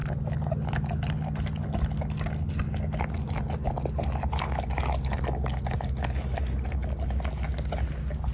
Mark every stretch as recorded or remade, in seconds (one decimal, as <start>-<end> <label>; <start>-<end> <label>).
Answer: 0.0-8.3 recorded

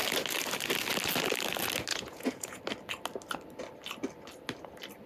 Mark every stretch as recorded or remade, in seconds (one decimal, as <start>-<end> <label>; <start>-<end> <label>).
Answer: 0.0-1.9 recorded; 1.9-2.6 remade; 2.6-5.1 recorded

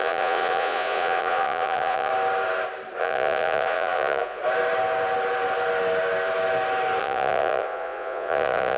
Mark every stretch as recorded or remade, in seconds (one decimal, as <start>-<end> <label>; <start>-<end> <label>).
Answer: 0.0-2.1 remade; 2.1-3.0 recorded; 3.0-4.4 remade; 4.4-7.0 recorded; 7.0-8.8 remade

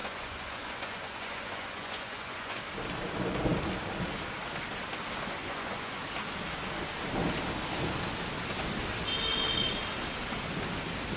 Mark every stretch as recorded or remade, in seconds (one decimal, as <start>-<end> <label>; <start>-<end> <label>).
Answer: 0.0-2.6 remade; 2.6-5.4 recorded; 5.4-6.0 remade; 6.0-11.2 recorded

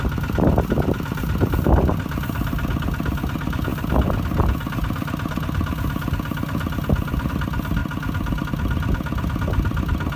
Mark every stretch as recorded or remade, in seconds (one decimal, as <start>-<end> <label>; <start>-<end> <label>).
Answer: 0.0-10.2 recorded

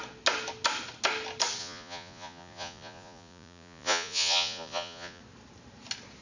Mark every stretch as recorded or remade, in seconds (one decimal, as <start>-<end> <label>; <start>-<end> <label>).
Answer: 0.0-1.6 recorded; 1.6-5.2 remade; 5.2-6.2 recorded

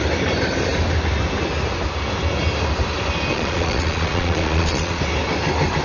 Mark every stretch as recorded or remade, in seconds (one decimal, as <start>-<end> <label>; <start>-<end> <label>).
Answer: 0.0-3.3 recorded; 3.3-5.0 remade; 5.0-5.8 recorded

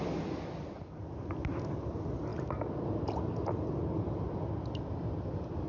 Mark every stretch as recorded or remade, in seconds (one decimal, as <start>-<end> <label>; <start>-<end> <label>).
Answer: 0.0-5.7 recorded